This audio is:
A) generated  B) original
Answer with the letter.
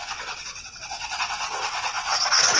A